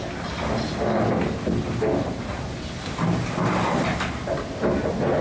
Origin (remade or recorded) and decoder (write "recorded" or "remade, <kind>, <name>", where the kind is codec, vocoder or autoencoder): recorded